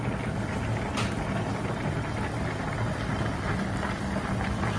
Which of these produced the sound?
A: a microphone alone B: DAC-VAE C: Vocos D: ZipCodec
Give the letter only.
A